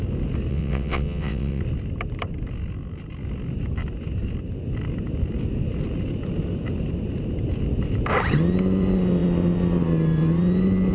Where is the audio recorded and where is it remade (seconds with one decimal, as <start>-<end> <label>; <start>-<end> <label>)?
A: 0.0-0.5 recorded; 0.5-1.6 remade; 1.6-10.9 recorded